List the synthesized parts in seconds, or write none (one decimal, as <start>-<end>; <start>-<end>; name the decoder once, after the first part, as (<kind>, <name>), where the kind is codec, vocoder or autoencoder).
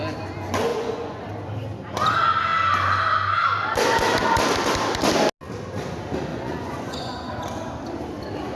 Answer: 0.7-1.2 (vocoder, Vocos); 6.3-7.3